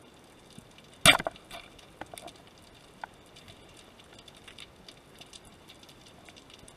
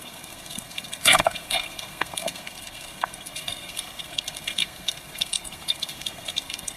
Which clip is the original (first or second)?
first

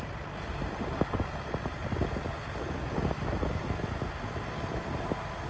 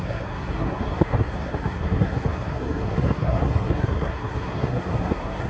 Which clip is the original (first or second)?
first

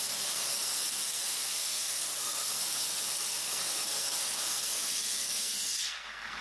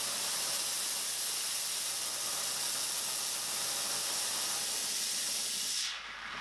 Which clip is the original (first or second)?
second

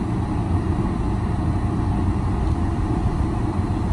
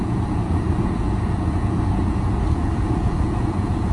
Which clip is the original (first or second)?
first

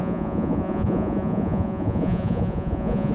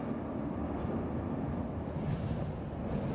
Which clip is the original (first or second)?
second